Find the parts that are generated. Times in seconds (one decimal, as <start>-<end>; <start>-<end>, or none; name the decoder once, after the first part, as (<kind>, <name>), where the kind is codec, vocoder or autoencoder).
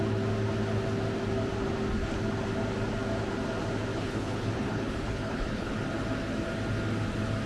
3.9-5.7 (codec, HILCodec)